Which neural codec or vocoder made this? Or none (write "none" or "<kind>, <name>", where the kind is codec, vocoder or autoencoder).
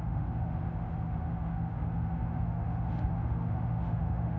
autoencoder, DAC-VAE